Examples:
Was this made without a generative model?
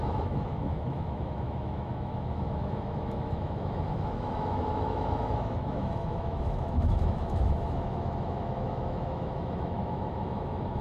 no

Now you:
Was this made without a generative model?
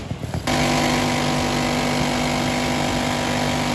yes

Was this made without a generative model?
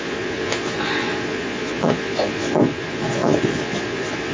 no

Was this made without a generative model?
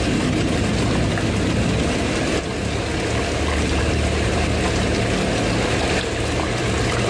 yes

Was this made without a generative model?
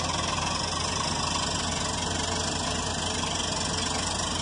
yes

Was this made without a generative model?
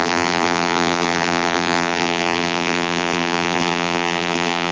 no